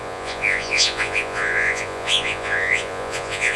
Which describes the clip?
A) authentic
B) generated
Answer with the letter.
B